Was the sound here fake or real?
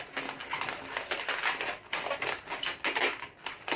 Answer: real